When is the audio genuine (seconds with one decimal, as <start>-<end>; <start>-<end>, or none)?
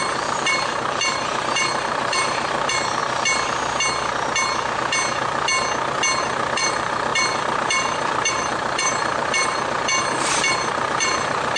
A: 3.0-6.2